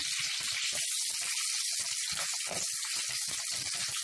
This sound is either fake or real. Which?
real